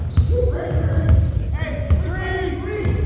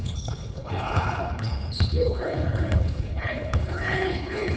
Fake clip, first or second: second